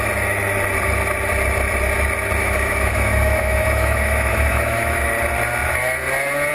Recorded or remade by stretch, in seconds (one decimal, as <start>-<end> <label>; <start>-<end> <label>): 0.0-2.4 recorded; 2.4-5.1 remade; 5.1-6.5 recorded